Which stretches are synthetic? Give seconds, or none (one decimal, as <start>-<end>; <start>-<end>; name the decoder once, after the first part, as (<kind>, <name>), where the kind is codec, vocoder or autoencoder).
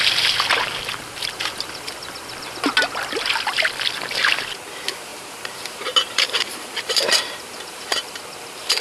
5.1-8.2 (vocoder, BigVGAN v2)